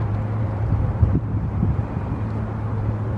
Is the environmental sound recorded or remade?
remade